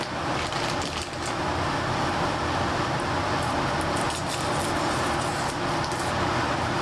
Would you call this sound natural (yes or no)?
yes